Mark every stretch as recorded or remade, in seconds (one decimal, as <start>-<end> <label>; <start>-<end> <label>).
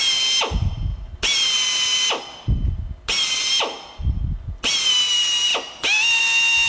0.0-6.7 recorded